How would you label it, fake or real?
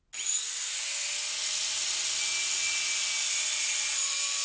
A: real